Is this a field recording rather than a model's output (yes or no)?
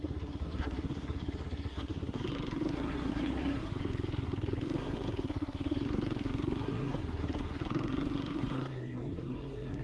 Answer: no